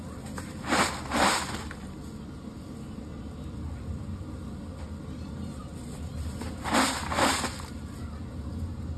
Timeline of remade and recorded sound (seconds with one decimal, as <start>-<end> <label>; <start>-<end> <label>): 0.0-9.0 recorded